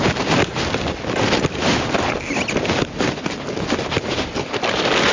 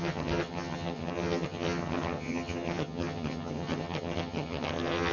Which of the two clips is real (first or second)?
first